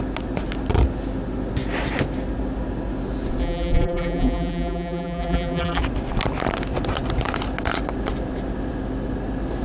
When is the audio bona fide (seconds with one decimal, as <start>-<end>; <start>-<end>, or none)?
0.0-3.4; 5.8-9.6